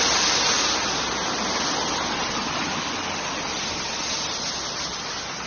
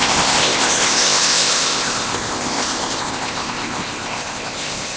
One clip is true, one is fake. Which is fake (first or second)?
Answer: second